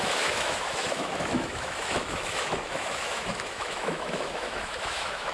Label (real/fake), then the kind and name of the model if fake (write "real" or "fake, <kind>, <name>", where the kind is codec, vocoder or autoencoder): fake, autoencoder, DAC-VAE